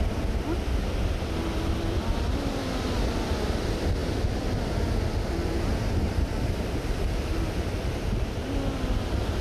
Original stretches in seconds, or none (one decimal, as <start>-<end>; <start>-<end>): 0.0-9.4